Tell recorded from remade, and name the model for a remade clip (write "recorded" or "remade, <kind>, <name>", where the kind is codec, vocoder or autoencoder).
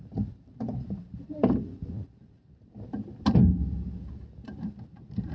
remade, vocoder, BigVGAN v2